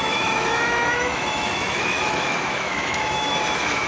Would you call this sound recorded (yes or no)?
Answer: no